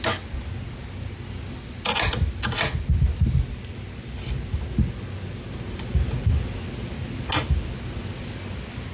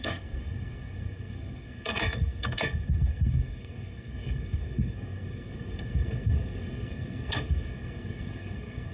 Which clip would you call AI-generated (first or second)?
second